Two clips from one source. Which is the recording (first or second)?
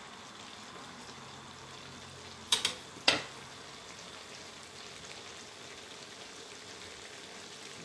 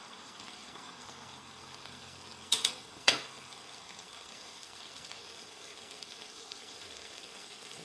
first